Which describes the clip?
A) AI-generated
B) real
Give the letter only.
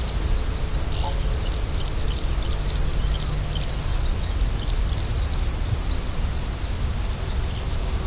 B